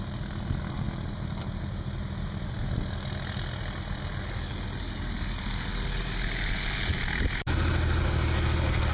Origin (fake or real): real